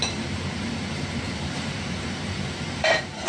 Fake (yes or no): yes